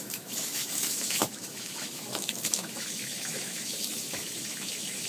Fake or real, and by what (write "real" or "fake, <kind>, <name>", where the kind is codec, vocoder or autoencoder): fake, autoencoder, DAC-VAE